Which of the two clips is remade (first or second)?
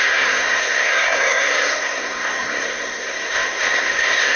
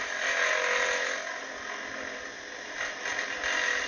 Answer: first